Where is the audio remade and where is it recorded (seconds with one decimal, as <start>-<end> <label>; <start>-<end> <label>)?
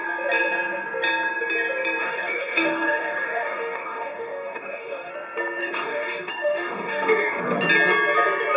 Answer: 0.0-2.0 recorded; 2.0-5.1 remade; 5.1-5.6 recorded; 5.6-7.4 remade; 7.4-8.6 recorded